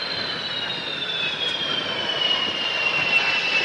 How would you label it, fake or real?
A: real